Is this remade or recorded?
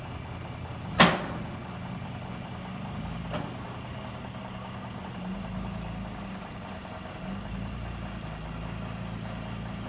recorded